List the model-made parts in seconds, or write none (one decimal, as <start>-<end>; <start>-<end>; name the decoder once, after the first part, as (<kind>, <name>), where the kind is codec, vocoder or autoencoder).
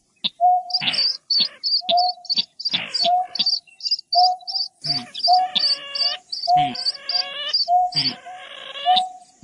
8.0-8.7 (vocoder, BigVGAN v2)